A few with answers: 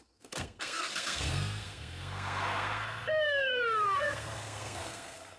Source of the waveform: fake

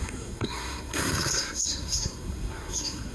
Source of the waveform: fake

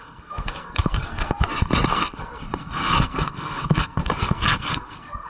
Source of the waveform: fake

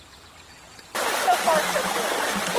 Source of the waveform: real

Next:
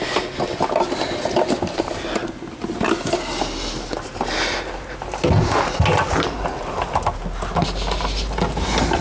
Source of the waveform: real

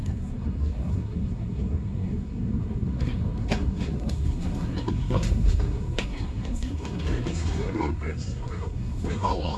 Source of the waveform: fake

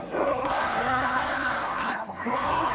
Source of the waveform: fake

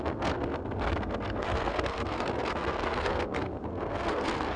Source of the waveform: fake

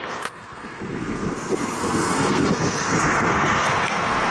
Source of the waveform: fake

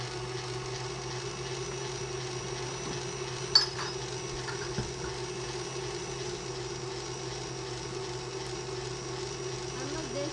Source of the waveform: real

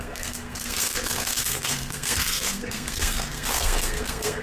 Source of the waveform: fake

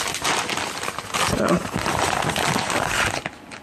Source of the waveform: real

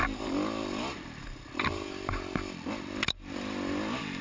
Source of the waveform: real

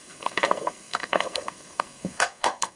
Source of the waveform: fake